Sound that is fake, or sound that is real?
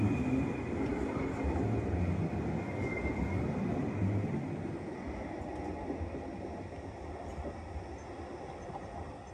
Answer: real